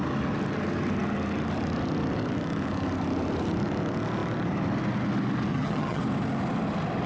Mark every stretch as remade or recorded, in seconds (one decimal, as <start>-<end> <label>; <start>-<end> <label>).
0.0-5.5 recorded; 5.5-6.0 remade; 6.0-7.1 recorded